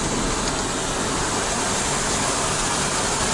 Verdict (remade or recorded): recorded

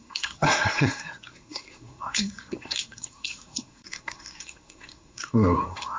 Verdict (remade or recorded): remade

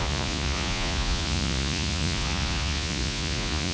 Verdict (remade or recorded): remade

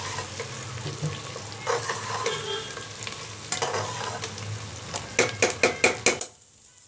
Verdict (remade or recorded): recorded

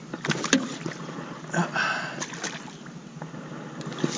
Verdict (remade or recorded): recorded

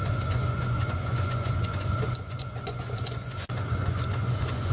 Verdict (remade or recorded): remade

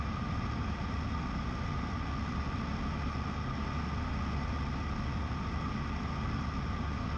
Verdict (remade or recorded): recorded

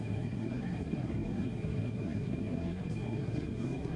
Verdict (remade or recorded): remade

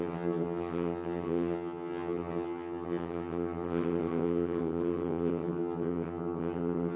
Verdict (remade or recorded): remade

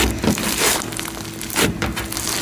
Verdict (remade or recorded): recorded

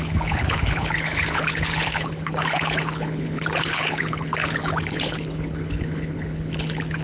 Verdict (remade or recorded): remade